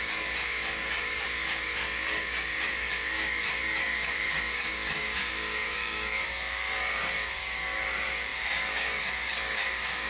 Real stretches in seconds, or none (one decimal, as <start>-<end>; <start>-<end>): none